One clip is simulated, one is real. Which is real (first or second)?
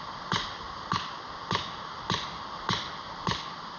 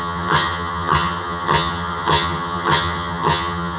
first